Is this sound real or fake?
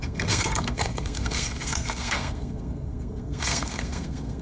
fake